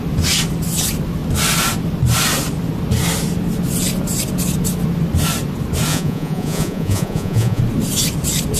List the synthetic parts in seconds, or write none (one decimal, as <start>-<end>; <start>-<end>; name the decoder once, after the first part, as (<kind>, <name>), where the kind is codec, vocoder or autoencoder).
5.9-7.6 (vocoder, Vocos)